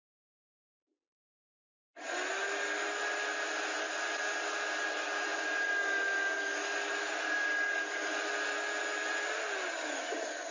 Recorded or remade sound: recorded